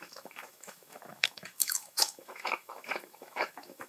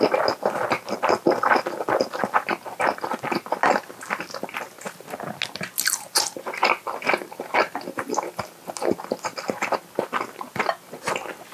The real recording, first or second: second